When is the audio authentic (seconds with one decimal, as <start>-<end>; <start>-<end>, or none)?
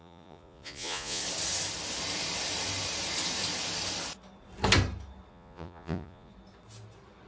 1.2-5.3; 6.3-7.3